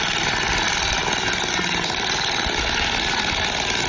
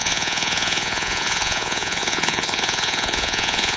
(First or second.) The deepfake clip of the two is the second